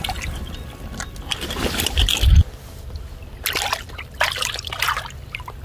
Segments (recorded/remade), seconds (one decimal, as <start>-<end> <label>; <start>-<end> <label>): 0.0-5.6 recorded